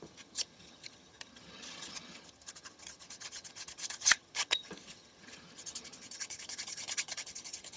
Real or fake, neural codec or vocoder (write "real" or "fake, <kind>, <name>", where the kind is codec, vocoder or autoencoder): fake, vocoder, HiFi-GAN